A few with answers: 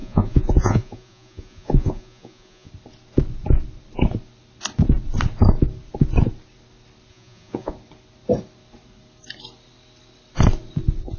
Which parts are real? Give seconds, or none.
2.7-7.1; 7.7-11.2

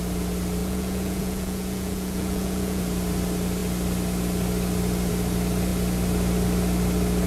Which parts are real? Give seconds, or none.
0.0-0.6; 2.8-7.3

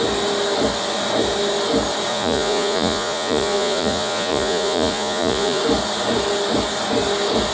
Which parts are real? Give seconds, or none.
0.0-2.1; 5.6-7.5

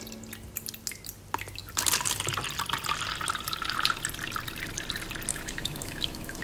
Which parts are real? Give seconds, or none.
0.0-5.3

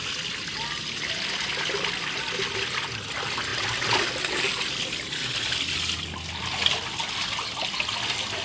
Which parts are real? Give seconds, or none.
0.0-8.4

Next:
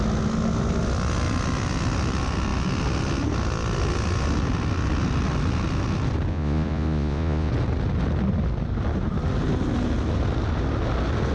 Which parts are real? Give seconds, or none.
0.0-6.3; 7.5-11.3

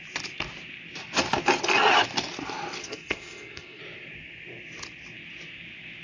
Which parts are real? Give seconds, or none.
0.0-2.8; 3.8-6.0